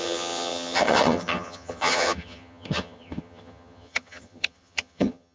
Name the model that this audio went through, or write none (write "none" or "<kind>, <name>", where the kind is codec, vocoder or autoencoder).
vocoder, HiFi-GAN